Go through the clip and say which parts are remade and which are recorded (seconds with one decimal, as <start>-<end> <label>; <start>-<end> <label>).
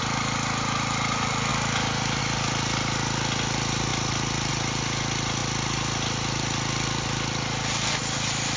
0.0-8.6 recorded